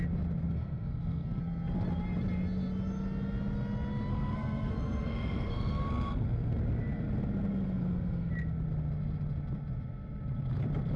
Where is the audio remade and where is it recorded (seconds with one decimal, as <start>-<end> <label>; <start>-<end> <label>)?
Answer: 0.0-0.4 recorded; 0.4-1.4 remade; 1.4-4.1 recorded; 4.1-6.6 remade; 6.6-7.5 recorded; 7.5-8.3 remade; 8.3-11.0 recorded